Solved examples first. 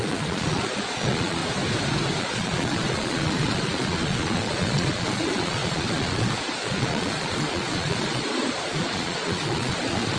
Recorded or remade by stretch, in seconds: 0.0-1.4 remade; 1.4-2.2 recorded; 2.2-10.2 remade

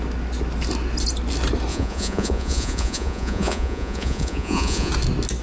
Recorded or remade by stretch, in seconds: 0.0-1.7 recorded; 1.7-4.9 remade; 4.9-5.4 recorded

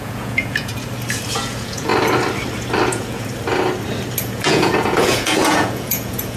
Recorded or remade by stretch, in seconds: 0.0-0.7 remade; 0.7-1.3 recorded; 1.3-1.9 remade; 1.9-2.9 recorded; 2.9-3.3 remade; 3.3-4.2 recorded; 4.2-6.4 remade

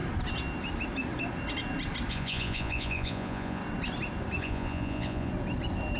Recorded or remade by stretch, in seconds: 0.0-2.1 recorded; 2.1-3.6 remade; 3.6-4.4 recorded; 4.4-5.3 remade; 5.3-6.0 recorded

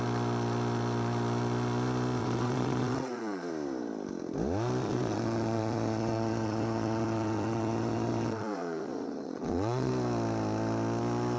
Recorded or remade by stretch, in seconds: 0.0-2.2 recorded; 2.2-3.5 remade; 3.5-4.8 recorded; 4.8-9.9 remade; 9.9-11.4 recorded